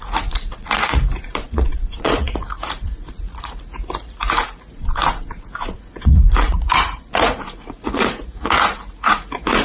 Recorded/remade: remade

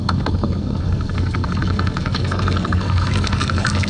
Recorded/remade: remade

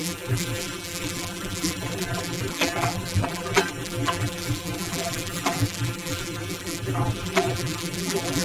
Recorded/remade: remade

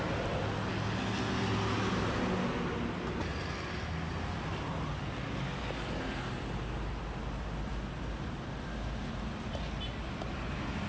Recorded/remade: recorded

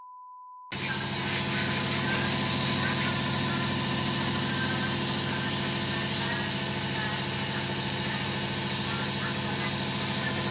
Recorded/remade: recorded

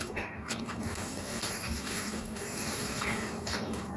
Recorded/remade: remade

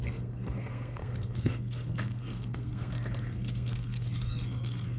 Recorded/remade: remade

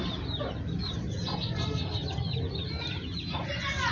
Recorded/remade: recorded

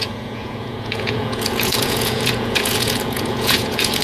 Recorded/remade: remade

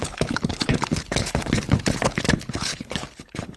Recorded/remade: remade